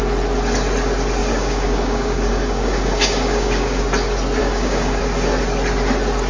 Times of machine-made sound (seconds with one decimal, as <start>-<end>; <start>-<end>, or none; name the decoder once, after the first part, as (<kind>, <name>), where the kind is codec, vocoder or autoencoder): 1.2-3.8 (codec, DAC); 4.4-5.0